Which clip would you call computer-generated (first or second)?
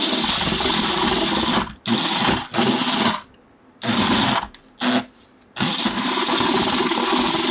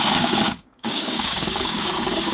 second